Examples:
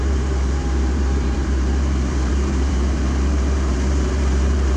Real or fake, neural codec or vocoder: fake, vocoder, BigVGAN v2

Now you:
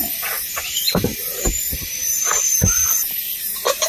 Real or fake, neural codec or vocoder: fake, vocoder, BigVGAN v2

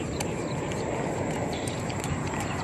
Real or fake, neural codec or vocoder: fake, vocoder, BigVGAN v2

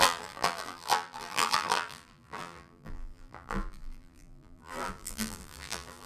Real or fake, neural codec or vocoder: fake, vocoder, BigVGAN v2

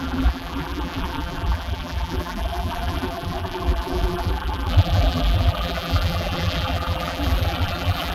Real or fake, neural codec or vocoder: fake, vocoder, BigVGAN v2